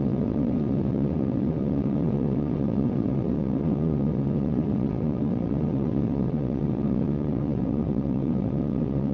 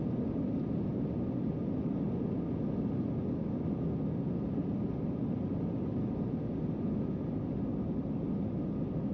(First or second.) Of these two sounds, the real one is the second